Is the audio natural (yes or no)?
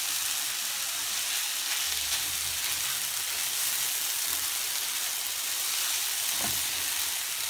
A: yes